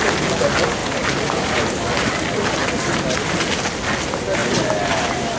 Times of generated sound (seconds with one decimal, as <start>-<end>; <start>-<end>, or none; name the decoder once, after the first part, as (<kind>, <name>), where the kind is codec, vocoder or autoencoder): none